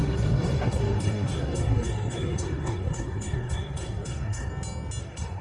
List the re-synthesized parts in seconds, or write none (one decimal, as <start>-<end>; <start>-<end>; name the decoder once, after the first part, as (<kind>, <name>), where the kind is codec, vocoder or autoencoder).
0.0-4.5 (codec, SNAC); 5.0-5.4